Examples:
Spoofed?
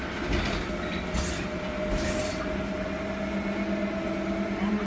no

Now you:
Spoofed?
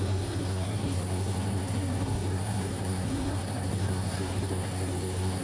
yes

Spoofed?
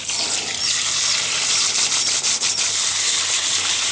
no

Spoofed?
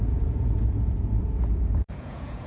yes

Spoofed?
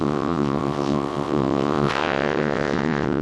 yes